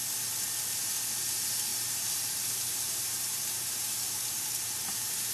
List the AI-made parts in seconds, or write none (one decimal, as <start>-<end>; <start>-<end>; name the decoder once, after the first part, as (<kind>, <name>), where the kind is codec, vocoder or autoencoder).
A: 1.7-5.3 (vocoder, BigVGAN v2)